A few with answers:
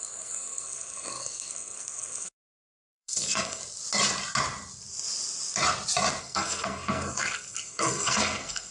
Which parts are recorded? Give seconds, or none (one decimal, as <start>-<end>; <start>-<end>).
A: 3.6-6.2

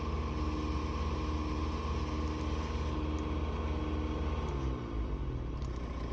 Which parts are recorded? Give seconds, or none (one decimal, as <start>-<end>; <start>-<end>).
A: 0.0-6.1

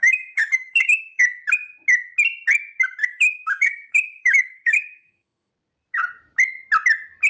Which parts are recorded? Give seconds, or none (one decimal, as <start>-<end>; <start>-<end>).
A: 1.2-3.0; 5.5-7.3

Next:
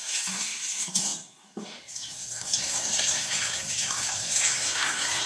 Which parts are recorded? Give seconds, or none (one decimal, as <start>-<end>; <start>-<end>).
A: none

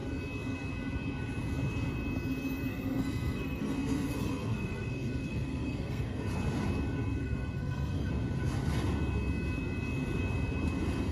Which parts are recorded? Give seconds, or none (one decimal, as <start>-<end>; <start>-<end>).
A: 0.0-2.7; 6.2-7.2; 8.1-11.1

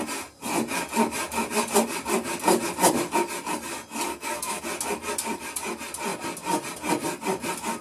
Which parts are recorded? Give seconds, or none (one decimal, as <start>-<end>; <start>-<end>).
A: 0.0-4.1; 4.6-7.8

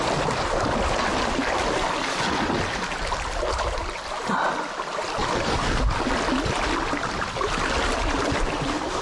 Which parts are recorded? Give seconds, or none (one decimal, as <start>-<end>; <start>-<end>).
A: 0.0-9.0